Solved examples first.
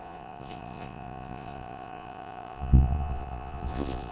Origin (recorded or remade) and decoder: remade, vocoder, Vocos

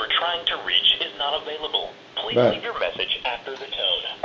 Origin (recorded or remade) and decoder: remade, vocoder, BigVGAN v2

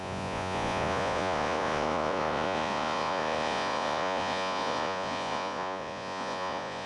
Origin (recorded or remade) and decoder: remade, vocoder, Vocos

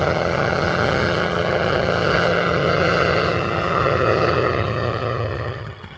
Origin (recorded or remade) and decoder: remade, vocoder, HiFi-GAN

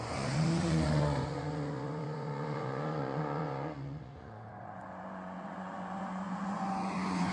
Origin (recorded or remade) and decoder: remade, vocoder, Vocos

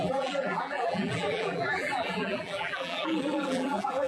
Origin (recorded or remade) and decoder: remade, vocoder, BigVGAN v2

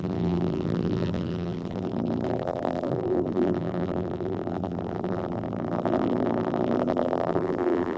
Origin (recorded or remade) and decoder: remade, vocoder, BigVGAN v2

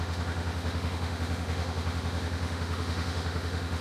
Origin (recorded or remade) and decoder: remade, autoencoder, DAC-VAE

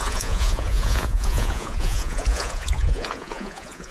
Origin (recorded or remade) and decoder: remade, vocoder, Vocos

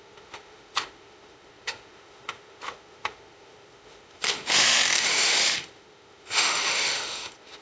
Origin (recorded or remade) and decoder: remade, autoencoder, DAC-VAE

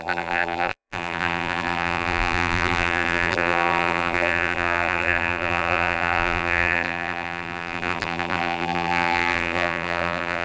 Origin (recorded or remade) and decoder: remade, vocoder, BigVGAN v2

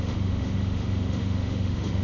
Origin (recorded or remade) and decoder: remade, autoencoder, DAC-VAE